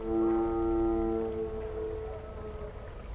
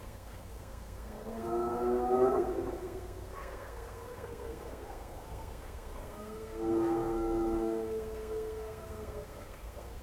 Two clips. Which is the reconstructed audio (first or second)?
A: second